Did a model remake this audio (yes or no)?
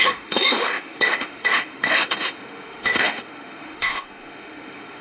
yes